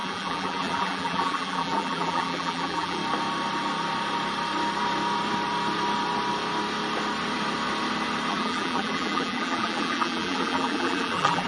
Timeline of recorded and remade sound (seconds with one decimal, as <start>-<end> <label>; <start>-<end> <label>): 0.0-3.0 remade; 3.0-8.3 recorded; 8.3-11.5 remade